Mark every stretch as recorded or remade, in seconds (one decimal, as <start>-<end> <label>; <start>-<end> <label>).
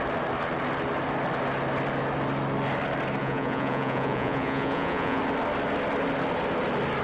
0.0-3.2 recorded; 3.2-5.2 remade; 5.2-7.0 recorded